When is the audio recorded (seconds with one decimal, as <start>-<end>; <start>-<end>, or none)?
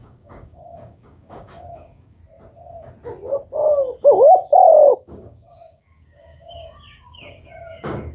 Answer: 2.2-4.9